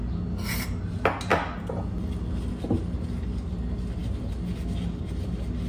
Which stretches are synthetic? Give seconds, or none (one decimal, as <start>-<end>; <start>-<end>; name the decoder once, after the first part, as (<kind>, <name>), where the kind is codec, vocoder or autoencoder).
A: none